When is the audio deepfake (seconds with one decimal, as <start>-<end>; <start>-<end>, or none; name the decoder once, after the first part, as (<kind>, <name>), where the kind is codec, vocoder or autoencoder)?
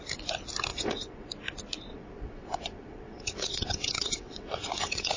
0.7-1.3 (vocoder, WaveNeXt); 1.9-5.2